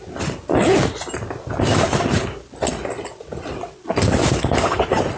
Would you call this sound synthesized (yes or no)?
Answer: no